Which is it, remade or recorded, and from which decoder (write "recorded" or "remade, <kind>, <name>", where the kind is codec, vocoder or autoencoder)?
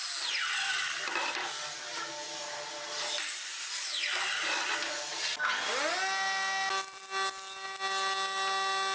recorded